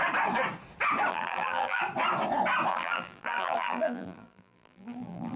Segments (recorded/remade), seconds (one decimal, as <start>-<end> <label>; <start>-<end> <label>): 0.0-1.1 recorded; 1.1-1.8 remade; 1.8-2.7 recorded; 2.7-5.4 remade